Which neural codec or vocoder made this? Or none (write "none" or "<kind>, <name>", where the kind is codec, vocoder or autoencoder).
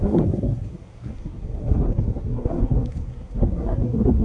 codec, SNAC